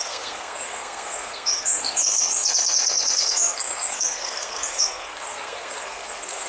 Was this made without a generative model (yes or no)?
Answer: no